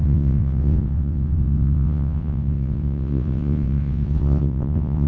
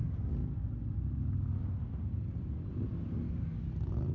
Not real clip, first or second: first